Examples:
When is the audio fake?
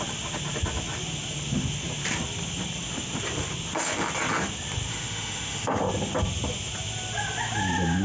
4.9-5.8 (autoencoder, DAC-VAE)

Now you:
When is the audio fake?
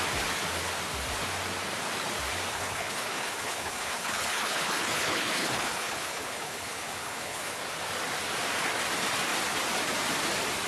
2.5-7.6 (codec, HILCodec)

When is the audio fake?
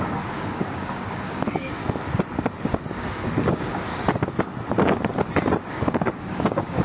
0.0-1.8 (codec, DAC); 2.8-3.9; 5.7-6.8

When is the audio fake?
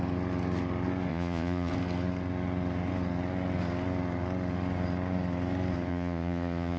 1.1-1.7 (vocoder, Vocos); 5.9-6.8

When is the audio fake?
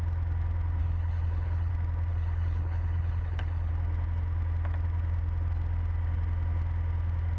0.8-1.7 (codec, HILCodec); 2.1-3.7